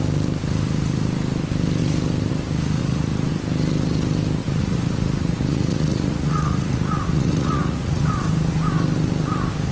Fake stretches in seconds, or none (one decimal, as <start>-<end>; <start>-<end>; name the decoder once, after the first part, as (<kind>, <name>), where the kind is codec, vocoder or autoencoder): 2.8-3.3 (vocoder, Vocos); 4.4-8.1